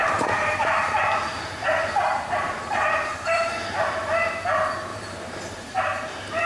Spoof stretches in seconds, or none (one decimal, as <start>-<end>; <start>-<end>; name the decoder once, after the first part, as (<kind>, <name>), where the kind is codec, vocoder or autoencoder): 0.0-3.9 (vocoder, BigVGAN v2); 4.9-5.8